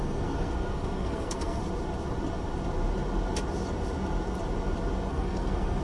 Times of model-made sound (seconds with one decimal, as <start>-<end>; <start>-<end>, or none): 0.0-1.6; 5.1-5.8

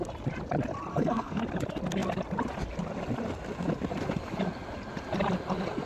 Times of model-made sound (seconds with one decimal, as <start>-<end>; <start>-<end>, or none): 0.9-1.4

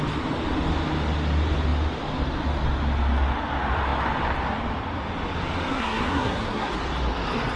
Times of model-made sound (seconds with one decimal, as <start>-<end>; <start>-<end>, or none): 5.7-6.7

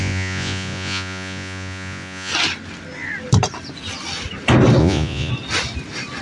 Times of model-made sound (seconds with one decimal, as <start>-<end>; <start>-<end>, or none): 0.0-2.3; 4.8-5.3

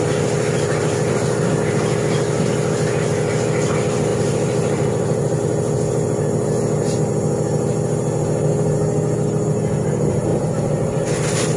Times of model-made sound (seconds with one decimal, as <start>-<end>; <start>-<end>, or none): 4.1-5.4; 10.3-11.6

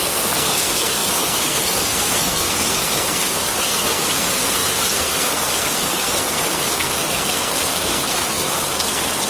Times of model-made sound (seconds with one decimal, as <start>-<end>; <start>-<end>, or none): 0.0-9.3

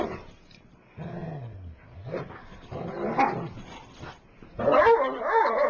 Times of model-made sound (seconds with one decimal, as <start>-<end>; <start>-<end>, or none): none

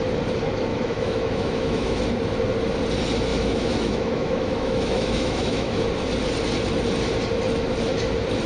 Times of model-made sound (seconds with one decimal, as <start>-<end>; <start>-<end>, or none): 0.7-2.0; 3.3-5.8